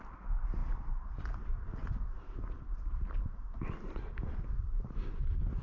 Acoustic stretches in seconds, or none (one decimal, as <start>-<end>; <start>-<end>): 0.0-5.6